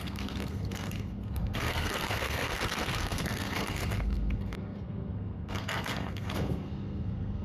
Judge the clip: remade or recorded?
remade